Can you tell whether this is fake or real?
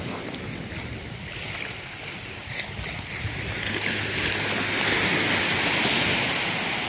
real